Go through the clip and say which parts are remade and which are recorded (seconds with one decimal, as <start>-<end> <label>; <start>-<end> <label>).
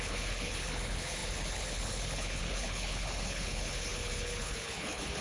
0.0-5.2 remade